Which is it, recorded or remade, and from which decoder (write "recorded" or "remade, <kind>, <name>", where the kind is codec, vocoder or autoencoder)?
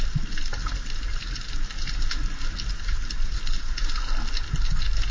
recorded